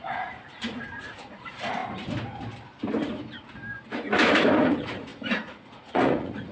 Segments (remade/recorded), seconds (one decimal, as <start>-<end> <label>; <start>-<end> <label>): 0.0-1.8 remade; 1.8-4.6 recorded; 4.6-6.5 remade